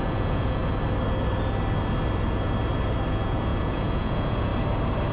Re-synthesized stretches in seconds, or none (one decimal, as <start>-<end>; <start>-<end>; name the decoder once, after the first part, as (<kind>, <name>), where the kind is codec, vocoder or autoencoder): 0.0-0.6 (vocoder, Vocos); 3.1-4.5